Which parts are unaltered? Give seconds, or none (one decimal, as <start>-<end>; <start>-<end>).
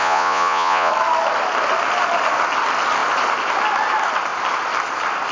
0.9-5.3